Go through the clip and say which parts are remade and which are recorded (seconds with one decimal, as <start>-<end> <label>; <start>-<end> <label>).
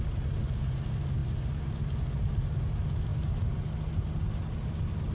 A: 0.0-5.1 recorded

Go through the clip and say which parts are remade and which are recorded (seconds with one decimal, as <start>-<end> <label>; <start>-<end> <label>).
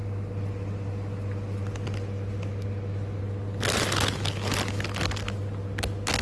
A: 0.0-6.2 recorded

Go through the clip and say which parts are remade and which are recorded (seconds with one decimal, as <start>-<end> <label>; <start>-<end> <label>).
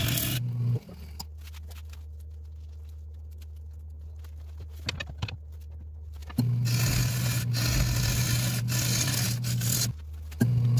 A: 0.0-10.8 recorded